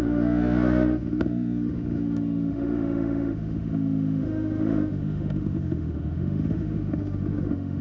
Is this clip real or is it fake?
fake